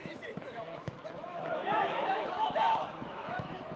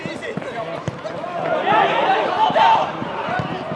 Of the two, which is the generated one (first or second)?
first